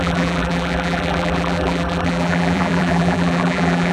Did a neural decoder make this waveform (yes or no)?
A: yes